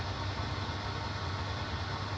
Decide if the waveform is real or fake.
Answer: real